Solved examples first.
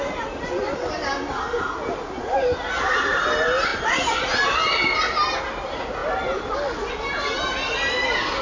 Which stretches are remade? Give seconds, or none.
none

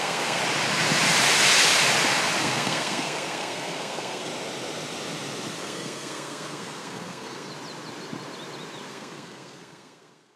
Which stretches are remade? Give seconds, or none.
0.0-0.4; 2.4-4.3; 5.6-7.5; 8.9-10.4

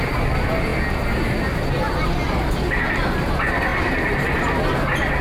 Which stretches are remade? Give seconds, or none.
none

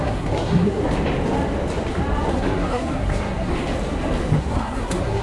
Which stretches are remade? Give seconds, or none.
0.0-0.8; 2.3-3.5; 4.4-5.2

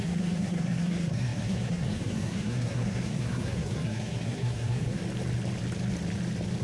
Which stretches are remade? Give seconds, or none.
0.0-5.0